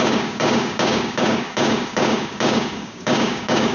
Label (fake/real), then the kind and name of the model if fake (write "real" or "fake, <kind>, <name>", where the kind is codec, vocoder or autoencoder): fake, codec, DAC